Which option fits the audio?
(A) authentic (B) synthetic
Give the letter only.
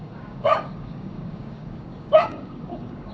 B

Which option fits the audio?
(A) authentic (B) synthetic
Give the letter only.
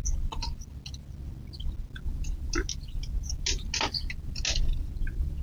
A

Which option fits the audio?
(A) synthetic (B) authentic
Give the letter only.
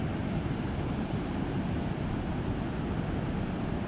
B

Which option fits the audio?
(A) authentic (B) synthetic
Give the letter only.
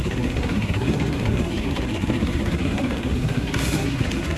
B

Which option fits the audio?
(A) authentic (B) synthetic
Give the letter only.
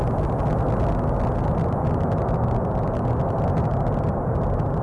A